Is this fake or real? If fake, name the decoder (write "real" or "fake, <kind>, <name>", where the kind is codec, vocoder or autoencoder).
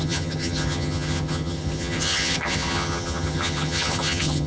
fake, vocoder, HiFi-GAN